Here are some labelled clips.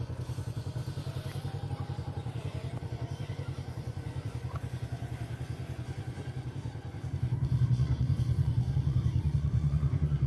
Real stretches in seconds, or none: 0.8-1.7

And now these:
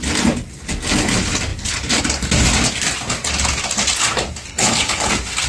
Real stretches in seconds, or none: 0.0-4.5; 5.1-5.5

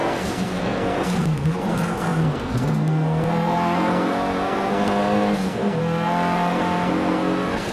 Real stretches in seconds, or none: none

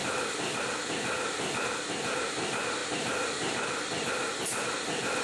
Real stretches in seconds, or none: 0.0-5.2

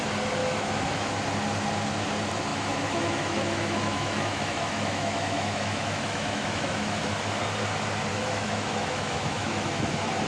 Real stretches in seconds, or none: 0.0-0.4; 1.1-2.5; 7.1-8.1; 9.8-10.3

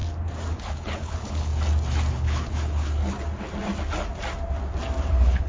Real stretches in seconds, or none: 0.0-0.5; 1.5-2.1; 3.0-5.1

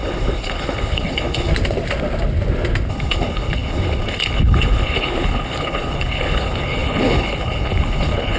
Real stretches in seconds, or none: 1.5-2.9

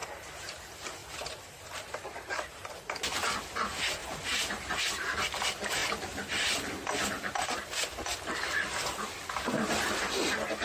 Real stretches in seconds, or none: 0.6-1.0; 2.7-4.0; 4.8-10.6